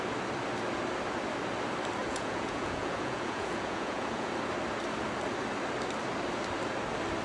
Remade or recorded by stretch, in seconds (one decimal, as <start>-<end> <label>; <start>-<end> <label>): 0.0-2.0 recorded; 2.0-4.3 remade; 4.3-7.2 recorded